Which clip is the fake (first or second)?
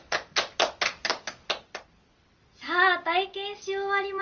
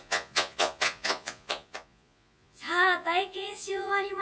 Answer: second